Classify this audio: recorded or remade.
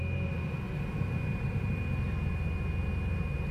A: recorded